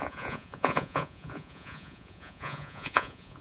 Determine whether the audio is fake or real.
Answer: fake